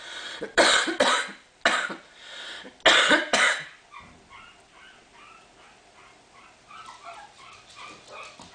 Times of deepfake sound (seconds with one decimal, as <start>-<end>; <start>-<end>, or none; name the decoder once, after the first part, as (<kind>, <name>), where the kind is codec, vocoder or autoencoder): 0.0-1.3 (vocoder, BigVGAN v2); 5.1-8.5